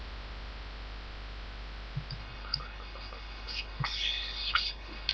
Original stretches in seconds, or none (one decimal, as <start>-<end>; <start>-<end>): 0.0-2.2